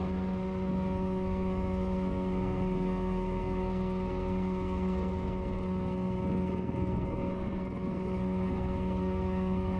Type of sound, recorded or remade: remade